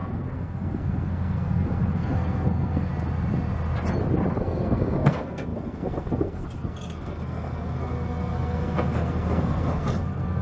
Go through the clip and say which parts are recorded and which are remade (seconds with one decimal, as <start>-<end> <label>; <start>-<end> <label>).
0.0-2.9 remade; 2.9-4.4 recorded; 4.4-10.4 remade